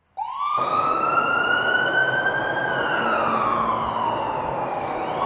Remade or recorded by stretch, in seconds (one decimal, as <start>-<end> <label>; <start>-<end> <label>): 0.0-5.3 recorded

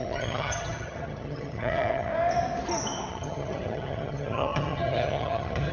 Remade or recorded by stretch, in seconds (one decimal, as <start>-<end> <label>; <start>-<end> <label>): 0.0-2.1 remade; 2.1-3.1 recorded; 3.1-5.7 remade

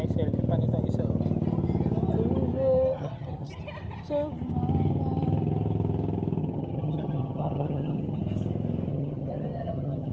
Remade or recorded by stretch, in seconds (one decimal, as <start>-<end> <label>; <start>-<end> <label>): 0.0-2.9 recorded; 2.9-3.5 remade; 3.5-6.4 recorded; 6.4-8.2 remade; 8.2-8.9 recorded; 8.9-10.1 remade

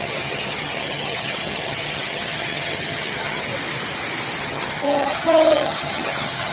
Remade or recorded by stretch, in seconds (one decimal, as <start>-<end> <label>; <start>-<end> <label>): 0.0-3.5 remade; 3.5-4.4 recorded; 4.4-6.5 remade

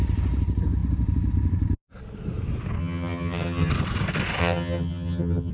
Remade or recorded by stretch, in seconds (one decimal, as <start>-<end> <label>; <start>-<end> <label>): 0.0-2.8 recorded; 2.8-3.7 remade; 3.7-4.4 recorded; 4.4-5.5 remade